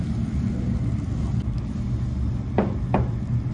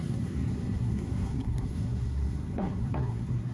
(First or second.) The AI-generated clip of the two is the second